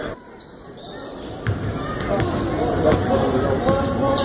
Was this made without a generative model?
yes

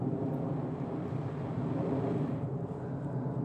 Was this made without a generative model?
yes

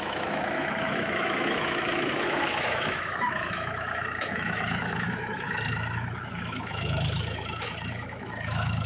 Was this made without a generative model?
no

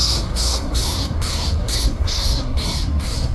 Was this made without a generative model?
no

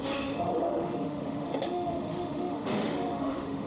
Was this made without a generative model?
no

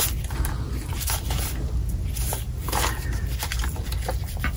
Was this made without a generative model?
yes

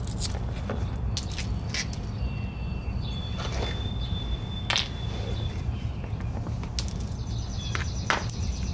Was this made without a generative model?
yes